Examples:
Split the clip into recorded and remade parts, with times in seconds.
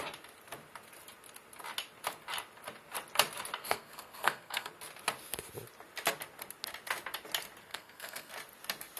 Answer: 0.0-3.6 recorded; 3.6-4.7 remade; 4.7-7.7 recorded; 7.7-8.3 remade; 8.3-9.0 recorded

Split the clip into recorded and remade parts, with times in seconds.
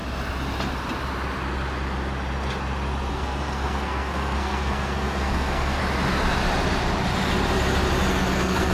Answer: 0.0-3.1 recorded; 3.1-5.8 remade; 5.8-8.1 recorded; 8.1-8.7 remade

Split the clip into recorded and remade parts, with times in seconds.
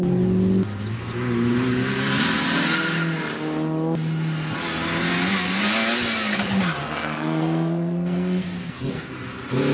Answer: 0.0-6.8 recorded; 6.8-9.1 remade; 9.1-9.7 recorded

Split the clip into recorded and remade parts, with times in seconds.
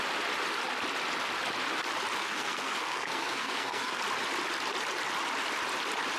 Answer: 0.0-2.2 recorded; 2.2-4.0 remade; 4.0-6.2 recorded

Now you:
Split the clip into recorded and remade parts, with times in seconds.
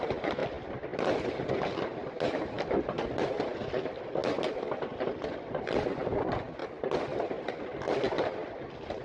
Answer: 0.0-9.0 recorded